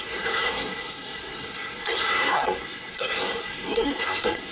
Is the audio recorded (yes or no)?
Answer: no